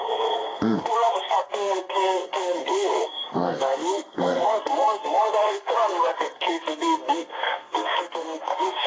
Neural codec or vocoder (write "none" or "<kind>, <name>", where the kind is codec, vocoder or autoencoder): codec, SNAC